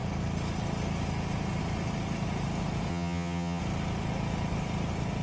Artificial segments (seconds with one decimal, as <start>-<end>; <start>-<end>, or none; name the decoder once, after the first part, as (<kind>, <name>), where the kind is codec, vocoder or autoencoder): 2.9-3.6 (vocoder, HiFi-GAN)